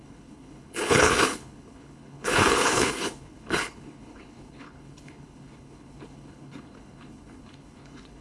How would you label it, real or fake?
fake